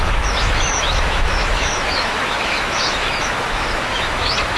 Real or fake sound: fake